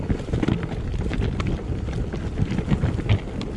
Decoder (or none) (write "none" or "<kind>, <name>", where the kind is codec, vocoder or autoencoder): none